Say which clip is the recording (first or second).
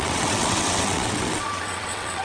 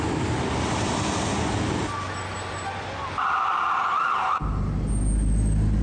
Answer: second